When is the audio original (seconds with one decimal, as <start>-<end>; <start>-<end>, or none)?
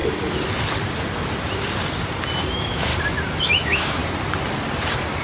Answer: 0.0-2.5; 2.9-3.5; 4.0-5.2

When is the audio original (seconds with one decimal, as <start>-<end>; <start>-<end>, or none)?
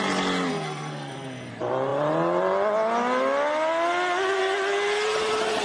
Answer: 0.0-0.5; 1.5-5.6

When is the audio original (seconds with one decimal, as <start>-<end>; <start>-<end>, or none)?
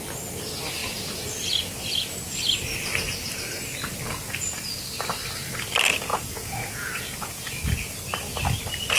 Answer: 0.0-6.1; 7.5-9.0